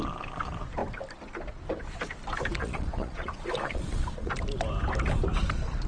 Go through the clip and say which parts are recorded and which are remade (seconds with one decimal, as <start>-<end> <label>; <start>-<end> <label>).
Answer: 0.0-2.6 recorded; 2.6-4.3 remade; 4.3-5.9 recorded